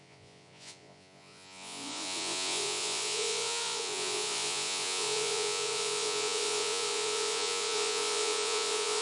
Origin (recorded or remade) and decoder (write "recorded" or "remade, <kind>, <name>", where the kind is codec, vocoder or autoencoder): remade, vocoder, Vocos